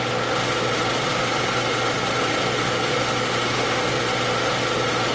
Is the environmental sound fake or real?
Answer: real